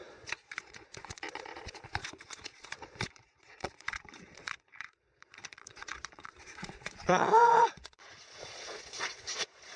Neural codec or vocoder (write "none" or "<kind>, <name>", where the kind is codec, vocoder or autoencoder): vocoder, Vocos